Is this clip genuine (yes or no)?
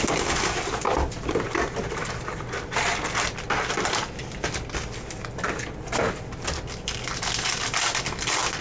yes